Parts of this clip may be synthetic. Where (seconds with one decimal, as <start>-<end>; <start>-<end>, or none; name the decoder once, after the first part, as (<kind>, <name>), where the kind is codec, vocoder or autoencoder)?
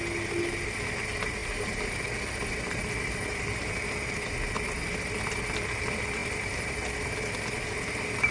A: none